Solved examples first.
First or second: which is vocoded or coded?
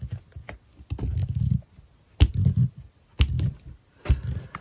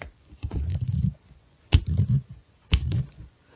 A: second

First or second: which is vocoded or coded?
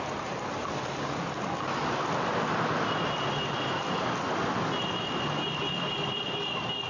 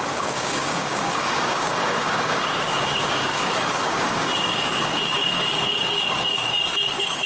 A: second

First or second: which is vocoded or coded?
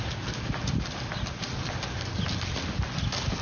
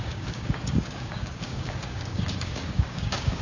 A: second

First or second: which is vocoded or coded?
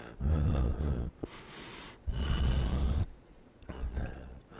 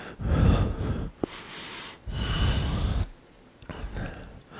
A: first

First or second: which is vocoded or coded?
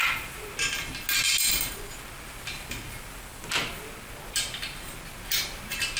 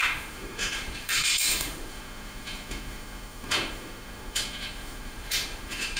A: second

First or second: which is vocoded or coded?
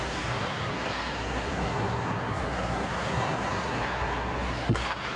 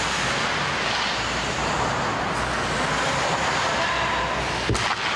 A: first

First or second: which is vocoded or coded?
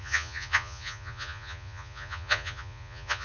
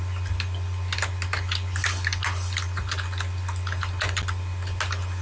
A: first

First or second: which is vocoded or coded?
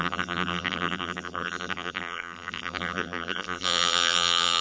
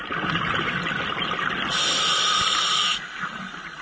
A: first